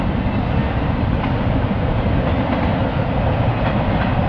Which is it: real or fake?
real